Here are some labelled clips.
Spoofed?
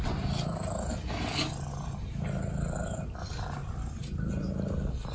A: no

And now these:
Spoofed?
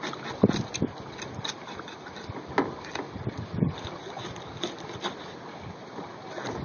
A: no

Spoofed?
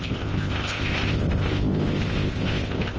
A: yes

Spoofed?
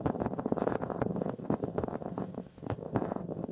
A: yes